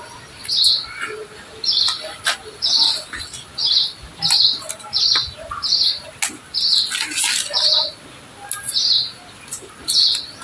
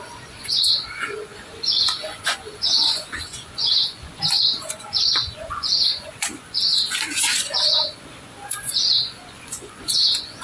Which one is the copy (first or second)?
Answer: second